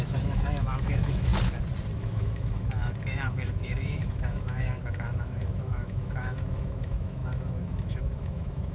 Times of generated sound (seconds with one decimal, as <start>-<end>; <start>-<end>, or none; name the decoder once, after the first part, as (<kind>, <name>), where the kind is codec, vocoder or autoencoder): 0.0-1.3 (autoencoder, DAC-VAE); 2.0-8.7